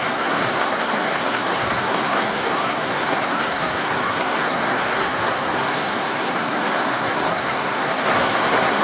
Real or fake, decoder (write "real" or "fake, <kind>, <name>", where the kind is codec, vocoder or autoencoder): fake, codec, SNAC